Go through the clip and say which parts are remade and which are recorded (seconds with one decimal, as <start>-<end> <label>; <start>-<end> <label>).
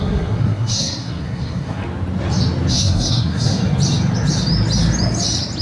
0.0-1.8 remade; 1.8-2.7 recorded; 2.7-3.6 remade; 3.6-5.6 recorded